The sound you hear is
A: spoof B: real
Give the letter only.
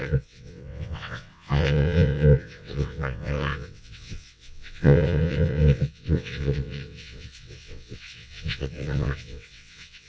A